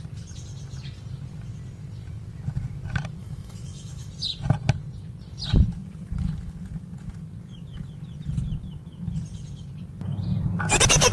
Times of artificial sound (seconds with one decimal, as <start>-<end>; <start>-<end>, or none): 3.2-4.1